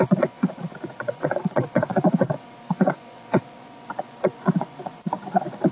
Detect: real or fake fake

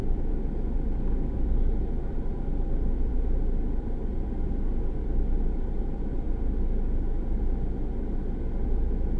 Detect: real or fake real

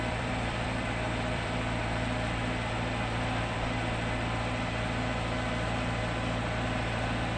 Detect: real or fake fake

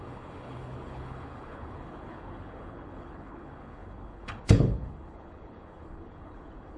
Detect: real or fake fake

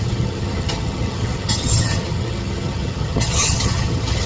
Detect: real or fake fake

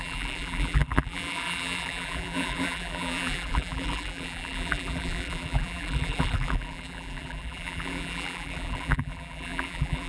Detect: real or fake fake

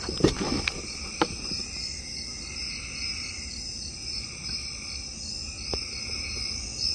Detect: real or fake real